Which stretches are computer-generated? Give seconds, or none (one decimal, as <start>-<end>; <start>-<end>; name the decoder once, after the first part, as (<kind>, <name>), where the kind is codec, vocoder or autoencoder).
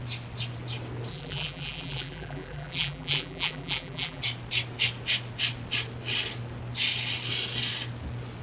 1.1-4.2 (vocoder, BigVGAN v2)